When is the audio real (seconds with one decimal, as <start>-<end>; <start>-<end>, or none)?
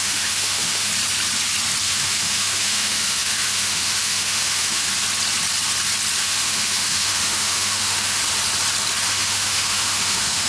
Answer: 0.9-1.8; 4.9-6.2; 8.2-9.1